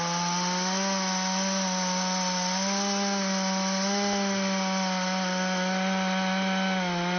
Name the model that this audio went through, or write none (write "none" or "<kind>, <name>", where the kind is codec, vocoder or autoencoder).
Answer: none